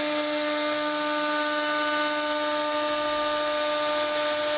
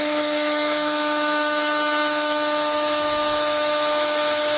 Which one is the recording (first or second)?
first